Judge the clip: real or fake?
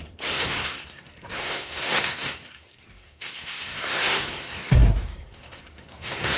fake